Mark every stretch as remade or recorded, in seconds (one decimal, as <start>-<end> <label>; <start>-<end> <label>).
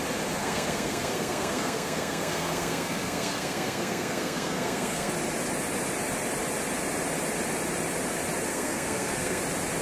0.0-0.4 recorded; 0.4-5.1 remade; 5.1-8.5 recorded; 8.5-9.4 remade; 9.4-9.8 recorded